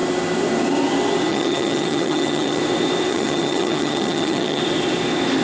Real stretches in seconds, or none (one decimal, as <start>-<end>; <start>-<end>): 0.0-1.3; 2.6-3.1; 4.6-5.4